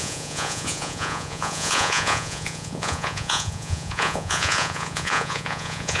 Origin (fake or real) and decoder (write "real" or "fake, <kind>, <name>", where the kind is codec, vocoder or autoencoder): fake, vocoder, Vocos